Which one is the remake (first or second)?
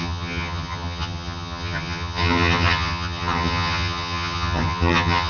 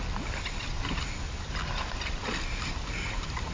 first